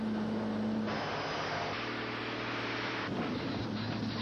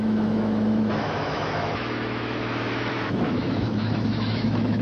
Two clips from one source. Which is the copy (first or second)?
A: second